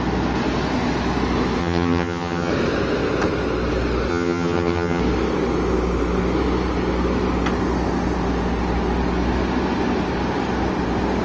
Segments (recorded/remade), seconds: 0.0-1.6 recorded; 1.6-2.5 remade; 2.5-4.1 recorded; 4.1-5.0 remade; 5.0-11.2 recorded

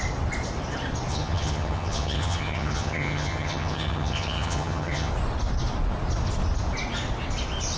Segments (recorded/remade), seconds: 0.0-1.1 recorded; 1.1-5.1 remade; 5.1-7.8 recorded